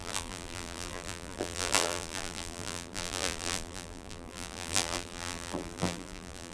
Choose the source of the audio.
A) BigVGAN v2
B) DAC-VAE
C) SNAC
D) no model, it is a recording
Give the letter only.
A